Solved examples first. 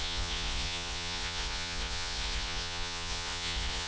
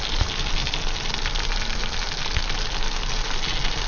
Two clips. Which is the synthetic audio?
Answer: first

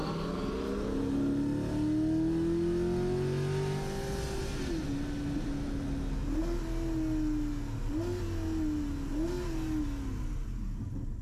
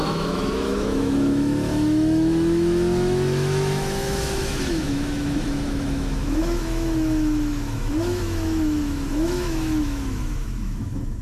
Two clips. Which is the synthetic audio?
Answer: second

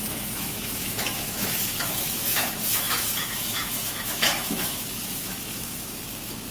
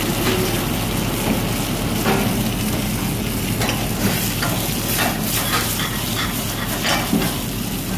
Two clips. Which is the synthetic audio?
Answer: first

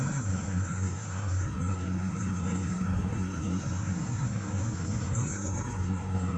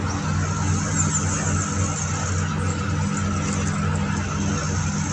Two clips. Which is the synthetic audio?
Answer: first